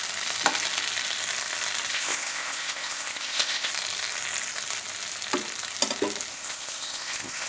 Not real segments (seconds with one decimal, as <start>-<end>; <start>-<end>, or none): 1.9-3.7; 6.3-7.5